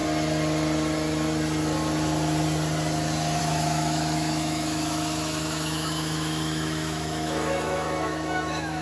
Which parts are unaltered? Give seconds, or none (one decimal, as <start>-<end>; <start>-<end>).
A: 0.0-3.4